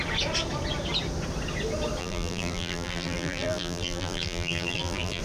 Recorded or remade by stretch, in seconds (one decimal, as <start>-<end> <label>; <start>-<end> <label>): 0.0-2.0 recorded; 2.0-5.2 remade